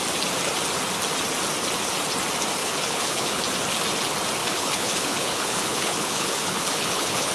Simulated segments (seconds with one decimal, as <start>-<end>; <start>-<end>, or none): 2.6-3.4; 4.4-7.3